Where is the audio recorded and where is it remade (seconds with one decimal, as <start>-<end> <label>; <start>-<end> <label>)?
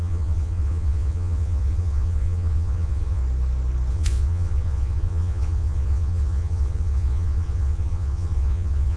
0.0-3.2 remade; 3.2-3.9 recorded; 3.9-9.0 remade